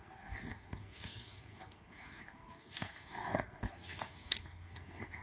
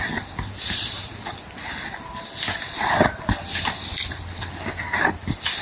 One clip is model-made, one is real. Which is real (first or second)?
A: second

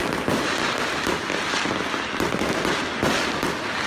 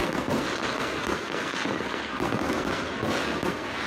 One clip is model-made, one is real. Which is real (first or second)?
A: first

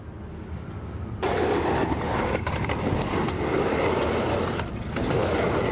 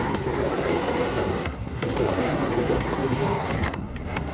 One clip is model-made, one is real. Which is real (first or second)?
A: first